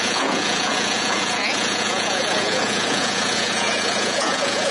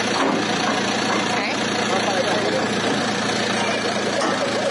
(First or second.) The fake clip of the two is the first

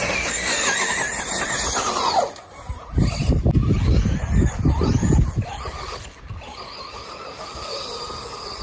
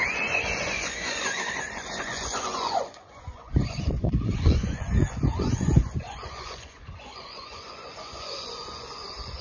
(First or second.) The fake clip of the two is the second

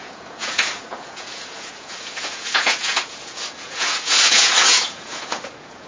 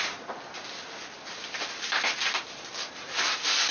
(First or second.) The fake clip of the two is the first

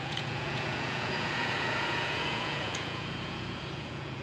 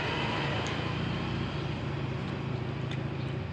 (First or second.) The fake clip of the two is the first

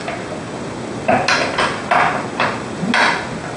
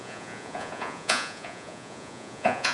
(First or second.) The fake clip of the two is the second